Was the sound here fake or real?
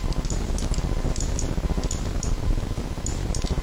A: real